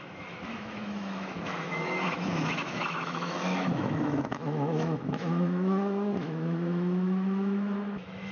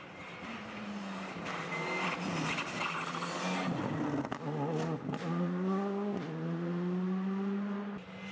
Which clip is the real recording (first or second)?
second